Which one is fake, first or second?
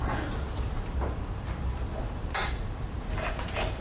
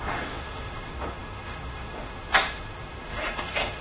second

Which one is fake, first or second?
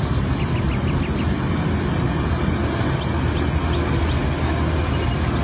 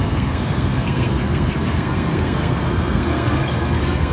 second